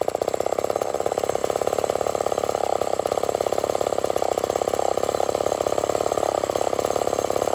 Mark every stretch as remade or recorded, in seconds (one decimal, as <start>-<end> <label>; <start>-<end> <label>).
0.0-1.4 recorded; 1.4-2.1 remade; 2.1-7.5 recorded